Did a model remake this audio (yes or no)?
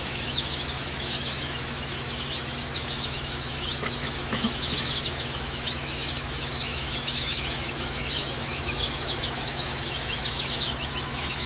yes